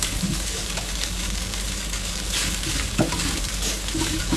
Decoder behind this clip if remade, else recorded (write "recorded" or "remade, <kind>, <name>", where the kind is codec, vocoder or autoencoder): remade, codec, DAC